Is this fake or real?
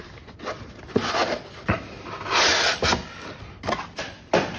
real